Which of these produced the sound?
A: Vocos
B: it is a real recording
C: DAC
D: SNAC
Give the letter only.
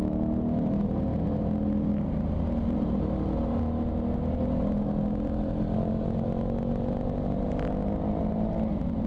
B